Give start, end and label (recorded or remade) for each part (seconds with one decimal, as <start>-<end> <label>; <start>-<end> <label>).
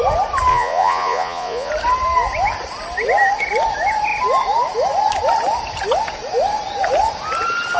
0.0-0.5 recorded; 0.5-1.7 remade; 1.7-7.8 recorded